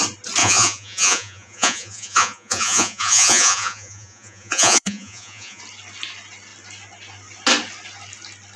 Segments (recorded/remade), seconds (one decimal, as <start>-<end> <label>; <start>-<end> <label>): 0.0-0.4 recorded; 0.4-5.6 remade; 5.6-8.6 recorded